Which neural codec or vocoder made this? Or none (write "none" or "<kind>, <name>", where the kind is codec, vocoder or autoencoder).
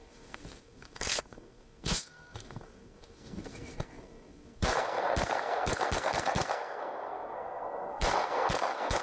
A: codec, SNAC